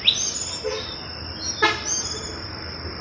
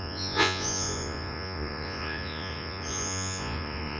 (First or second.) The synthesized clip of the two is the second